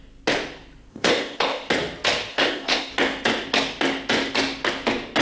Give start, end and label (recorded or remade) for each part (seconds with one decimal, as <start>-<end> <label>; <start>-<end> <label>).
0.0-0.9 recorded; 0.9-1.7 remade; 1.7-2.3 recorded; 2.3-2.9 remade; 2.9-5.2 recorded